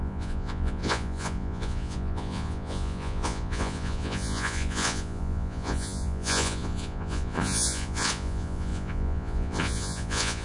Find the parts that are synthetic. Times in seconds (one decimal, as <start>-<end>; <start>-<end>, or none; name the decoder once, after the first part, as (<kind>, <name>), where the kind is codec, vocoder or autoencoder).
0.0-10.4 (vocoder, Vocos)